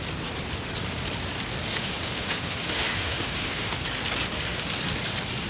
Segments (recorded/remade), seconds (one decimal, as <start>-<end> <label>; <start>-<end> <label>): 0.0-1.7 recorded; 1.7-3.8 remade; 3.8-5.5 recorded